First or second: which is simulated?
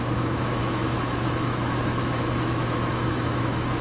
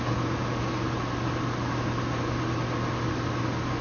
first